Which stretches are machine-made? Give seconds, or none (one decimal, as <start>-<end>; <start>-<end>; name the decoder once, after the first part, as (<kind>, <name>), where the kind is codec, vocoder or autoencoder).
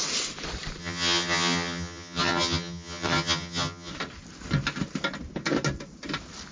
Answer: 0.8-3.9 (vocoder, HiFi-GAN)